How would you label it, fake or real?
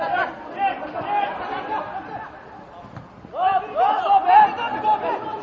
real